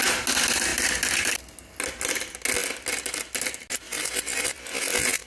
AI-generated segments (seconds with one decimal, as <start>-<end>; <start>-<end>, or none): none